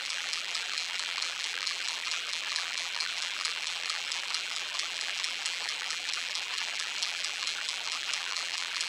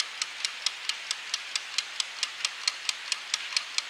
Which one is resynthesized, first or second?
first